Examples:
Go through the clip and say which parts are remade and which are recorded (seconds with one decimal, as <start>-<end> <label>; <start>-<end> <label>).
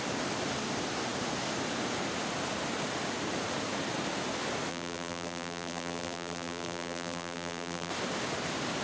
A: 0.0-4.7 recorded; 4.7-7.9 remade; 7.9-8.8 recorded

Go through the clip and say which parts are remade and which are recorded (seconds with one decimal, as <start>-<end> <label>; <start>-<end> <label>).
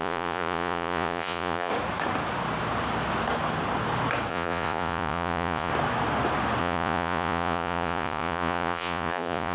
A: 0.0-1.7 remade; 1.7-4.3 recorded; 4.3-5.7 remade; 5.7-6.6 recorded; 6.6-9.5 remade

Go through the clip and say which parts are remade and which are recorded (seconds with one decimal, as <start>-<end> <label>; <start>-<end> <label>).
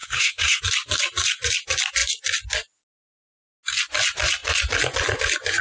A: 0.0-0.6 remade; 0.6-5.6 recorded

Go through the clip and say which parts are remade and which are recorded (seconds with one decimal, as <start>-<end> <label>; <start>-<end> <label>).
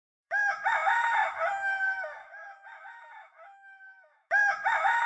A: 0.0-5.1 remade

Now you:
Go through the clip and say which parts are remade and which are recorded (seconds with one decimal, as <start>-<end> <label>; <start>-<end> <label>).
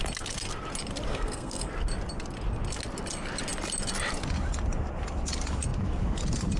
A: 0.0-1.1 recorded; 1.1-1.7 remade; 1.7-6.6 recorded